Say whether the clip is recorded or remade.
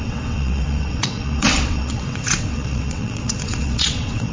remade